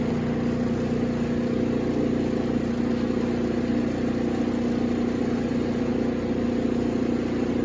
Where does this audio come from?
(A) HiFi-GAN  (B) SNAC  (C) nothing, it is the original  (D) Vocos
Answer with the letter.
C